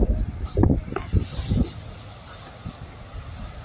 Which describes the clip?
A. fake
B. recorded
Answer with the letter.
B